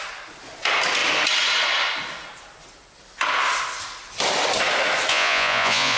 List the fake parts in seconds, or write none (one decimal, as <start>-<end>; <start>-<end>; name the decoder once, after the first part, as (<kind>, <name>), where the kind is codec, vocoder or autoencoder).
5.1-6.0 (vocoder, Vocos)

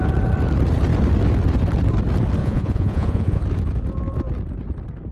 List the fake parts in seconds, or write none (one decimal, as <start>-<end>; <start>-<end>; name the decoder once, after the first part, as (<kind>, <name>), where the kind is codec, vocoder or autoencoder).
2.4-3.4 (vocoder, Vocos)